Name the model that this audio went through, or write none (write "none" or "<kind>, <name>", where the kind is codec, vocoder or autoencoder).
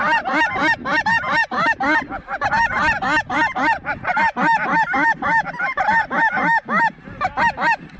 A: none